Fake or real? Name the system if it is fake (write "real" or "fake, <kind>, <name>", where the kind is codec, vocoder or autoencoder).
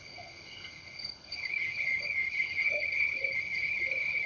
fake, codec, HILCodec